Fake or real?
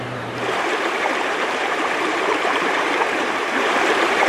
fake